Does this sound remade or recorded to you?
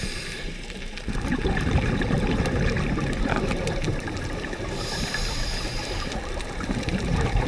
remade